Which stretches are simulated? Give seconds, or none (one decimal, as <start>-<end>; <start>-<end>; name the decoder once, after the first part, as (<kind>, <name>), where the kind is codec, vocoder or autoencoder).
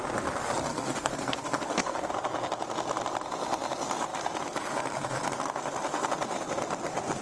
0.7-2.1 (codec, SNAC)